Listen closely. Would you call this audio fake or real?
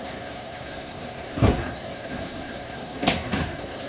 fake